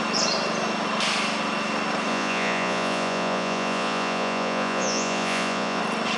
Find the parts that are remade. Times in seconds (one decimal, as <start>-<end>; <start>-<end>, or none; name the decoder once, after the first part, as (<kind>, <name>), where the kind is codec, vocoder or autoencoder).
2.1-5.8 (vocoder, Vocos)